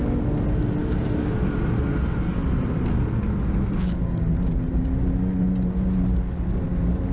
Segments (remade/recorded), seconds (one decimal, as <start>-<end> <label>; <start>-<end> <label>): 0.0-7.1 recorded